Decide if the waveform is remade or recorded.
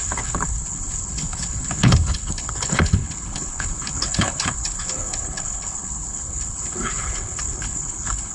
remade